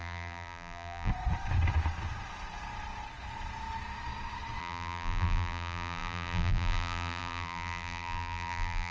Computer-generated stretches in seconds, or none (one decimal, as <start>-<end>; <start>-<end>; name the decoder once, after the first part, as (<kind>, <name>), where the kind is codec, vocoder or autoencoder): 0.0-1.1 (vocoder, BigVGAN v2); 4.6-8.9